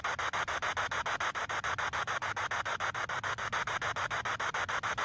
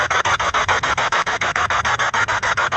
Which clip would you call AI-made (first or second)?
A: second